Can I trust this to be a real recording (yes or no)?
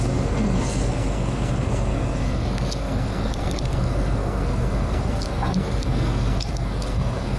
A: no